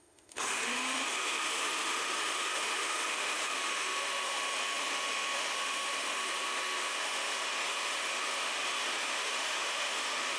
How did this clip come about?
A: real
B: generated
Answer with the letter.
B